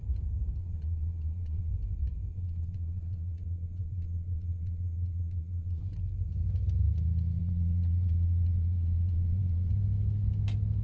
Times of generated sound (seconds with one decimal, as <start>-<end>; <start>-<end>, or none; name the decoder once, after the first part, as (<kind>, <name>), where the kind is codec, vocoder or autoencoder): 0.6-1.7 (vocoder, Vocos); 2.3-5.8; 7.4-9.7